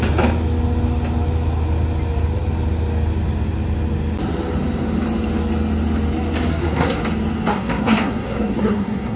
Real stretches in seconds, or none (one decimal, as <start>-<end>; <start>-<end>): 0.0-6.5; 7.0-7.5